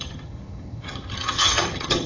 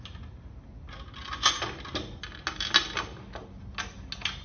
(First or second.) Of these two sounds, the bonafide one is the second